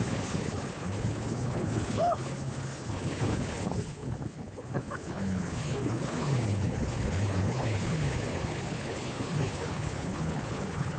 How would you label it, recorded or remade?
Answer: remade